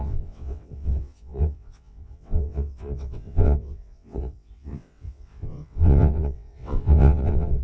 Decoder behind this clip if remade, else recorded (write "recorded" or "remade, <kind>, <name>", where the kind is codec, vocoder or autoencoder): remade, vocoder, WaveNeXt